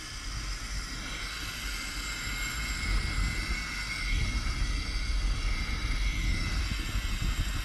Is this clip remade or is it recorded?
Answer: recorded